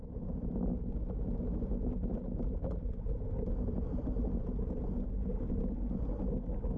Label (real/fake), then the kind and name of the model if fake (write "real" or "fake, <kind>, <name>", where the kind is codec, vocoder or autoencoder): real